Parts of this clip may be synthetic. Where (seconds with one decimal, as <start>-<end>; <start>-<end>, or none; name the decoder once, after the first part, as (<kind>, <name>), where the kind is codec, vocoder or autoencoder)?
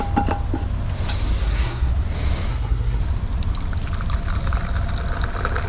1.4-1.9 (codec, SNAC); 2.5-3.0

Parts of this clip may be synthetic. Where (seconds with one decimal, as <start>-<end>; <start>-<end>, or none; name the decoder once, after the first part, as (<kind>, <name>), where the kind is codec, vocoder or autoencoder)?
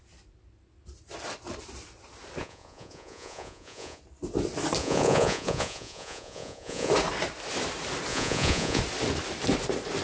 2.4-4.0 (vocoder, Vocos); 4.8-6.9; 8.1-8.8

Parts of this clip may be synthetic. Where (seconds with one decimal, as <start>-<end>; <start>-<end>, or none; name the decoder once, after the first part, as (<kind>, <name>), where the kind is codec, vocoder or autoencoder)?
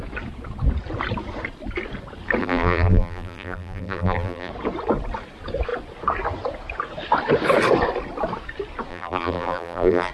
2.4-4.5 (vocoder, BigVGAN v2); 8.9-10.1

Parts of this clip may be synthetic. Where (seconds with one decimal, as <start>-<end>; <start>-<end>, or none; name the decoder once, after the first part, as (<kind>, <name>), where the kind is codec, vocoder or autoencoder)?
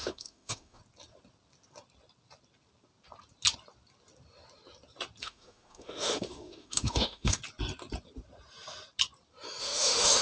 0.0-0.8 (autoencoder, DAC-VAE); 5.2-7.4; 9.6-10.2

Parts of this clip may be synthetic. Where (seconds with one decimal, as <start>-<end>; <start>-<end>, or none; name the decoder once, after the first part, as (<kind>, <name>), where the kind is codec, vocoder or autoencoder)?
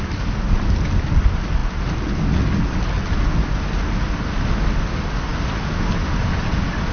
none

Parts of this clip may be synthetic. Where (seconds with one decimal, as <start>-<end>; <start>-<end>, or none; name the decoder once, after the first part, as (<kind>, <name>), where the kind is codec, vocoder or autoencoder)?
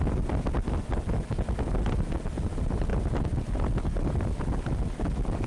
none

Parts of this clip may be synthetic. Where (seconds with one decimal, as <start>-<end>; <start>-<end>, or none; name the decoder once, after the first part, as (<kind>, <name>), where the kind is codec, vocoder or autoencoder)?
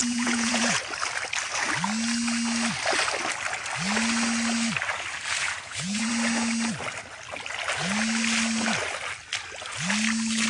0.0-0.8 (vocoder, Vocos); 5.4-6.1